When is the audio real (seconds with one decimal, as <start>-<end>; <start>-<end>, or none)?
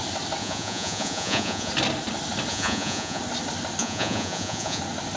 0.0-0.4; 1.7-2.5; 3.2-3.8; 4.8-5.2